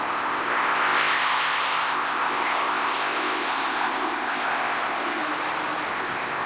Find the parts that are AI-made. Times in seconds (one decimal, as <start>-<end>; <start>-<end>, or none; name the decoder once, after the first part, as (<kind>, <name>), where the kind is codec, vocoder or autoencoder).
0.0-5.2 (codec, ZipCodec); 5.9-6.5